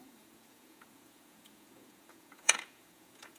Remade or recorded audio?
remade